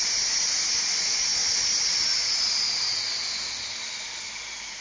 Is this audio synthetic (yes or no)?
no